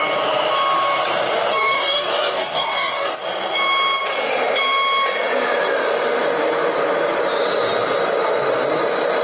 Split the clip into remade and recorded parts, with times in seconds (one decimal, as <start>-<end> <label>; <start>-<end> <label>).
0.0-1.5 recorded; 1.5-3.2 remade; 3.2-9.2 recorded